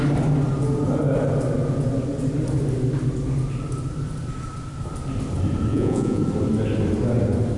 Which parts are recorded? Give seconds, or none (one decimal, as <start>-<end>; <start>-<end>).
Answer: 0.0-5.7; 6.2-7.6